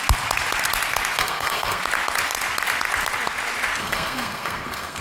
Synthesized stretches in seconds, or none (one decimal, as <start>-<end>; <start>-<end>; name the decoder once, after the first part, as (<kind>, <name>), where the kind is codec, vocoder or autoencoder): 1.2-1.8 (codec, SNAC); 3.8-5.0